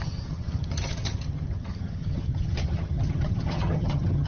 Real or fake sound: fake